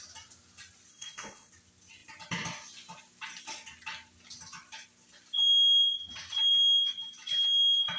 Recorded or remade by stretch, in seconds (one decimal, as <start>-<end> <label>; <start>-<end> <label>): 0.0-0.9 recorded; 0.9-1.5 remade; 1.5-8.0 recorded